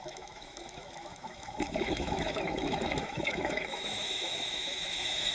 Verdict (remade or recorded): remade